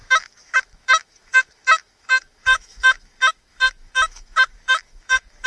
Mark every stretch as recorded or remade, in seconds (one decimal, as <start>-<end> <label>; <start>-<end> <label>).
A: 0.0-5.5 remade

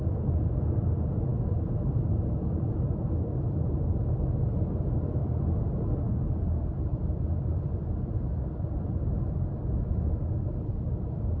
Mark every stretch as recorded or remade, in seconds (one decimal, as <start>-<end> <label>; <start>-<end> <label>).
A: 0.0-6.9 recorded; 6.9-11.4 remade

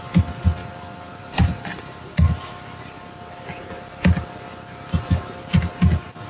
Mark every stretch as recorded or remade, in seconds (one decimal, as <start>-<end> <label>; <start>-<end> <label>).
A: 0.0-0.6 recorded; 0.6-1.8 remade; 1.8-6.3 recorded

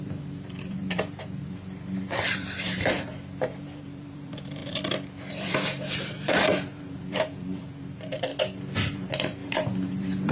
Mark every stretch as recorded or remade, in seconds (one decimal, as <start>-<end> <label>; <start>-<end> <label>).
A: 0.0-4.6 remade; 4.6-5.3 recorded; 5.3-8.3 remade; 8.3-8.9 recorded; 8.9-10.3 remade

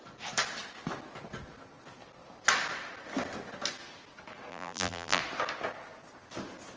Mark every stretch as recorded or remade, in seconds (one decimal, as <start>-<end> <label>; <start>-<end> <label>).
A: 0.0-4.5 recorded; 4.5-5.2 remade; 5.2-6.8 recorded

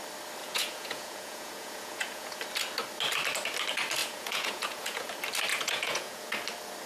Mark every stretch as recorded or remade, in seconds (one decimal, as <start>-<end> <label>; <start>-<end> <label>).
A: 0.0-0.4 recorded; 0.4-2.4 remade; 2.4-4.0 recorded; 4.0-5.1 remade; 5.1-5.5 recorded; 5.5-6.3 remade; 6.3-6.9 recorded

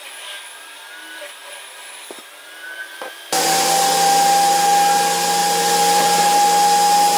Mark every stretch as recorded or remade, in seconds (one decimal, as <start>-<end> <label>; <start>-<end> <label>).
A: 0.0-1.4 recorded; 1.4-3.4 remade; 3.4-5.4 recorded; 5.4-6.2 remade; 6.2-7.2 recorded

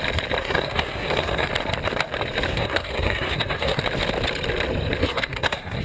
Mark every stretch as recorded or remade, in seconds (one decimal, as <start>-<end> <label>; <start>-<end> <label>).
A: 0.0-0.4 recorded; 0.4-1.5 remade; 1.5-2.5 recorded; 2.5-3.8 remade; 3.8-5.0 recorded; 5.0-5.8 remade